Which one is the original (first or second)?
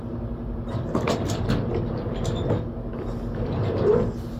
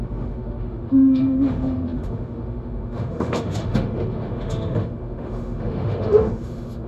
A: first